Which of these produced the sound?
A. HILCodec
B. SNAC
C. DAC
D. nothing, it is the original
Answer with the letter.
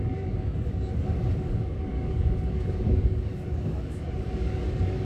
C